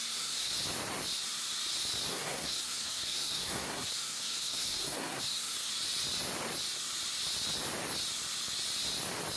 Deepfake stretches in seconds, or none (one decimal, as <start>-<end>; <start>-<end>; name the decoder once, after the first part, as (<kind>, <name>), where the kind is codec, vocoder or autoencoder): 0.0-0.5 (codec, SNAC); 2.1-5.7